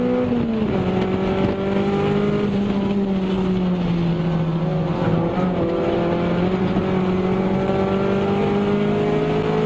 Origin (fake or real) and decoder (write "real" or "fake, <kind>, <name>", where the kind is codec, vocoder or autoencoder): real